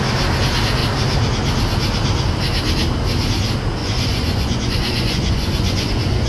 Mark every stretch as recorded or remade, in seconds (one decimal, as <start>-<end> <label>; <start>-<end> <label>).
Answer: 0.0-3.8 recorded; 3.8-6.3 remade